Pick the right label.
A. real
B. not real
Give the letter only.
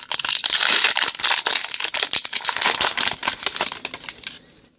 A